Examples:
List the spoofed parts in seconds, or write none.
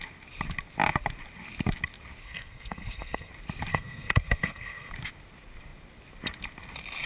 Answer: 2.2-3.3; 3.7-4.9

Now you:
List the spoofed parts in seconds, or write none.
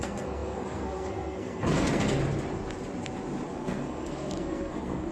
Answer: 0.0-2.2; 3.5-5.1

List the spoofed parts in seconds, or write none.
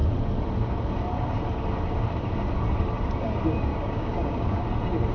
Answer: 3.7-4.6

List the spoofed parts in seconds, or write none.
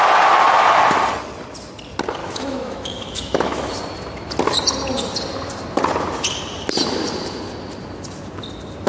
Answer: 2.2-3.7